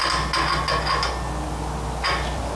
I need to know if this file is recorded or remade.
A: recorded